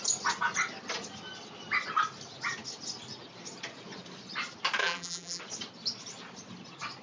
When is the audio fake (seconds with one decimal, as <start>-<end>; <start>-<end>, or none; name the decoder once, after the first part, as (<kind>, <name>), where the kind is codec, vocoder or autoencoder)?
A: 4.8-5.4 (vocoder, BigVGAN v2)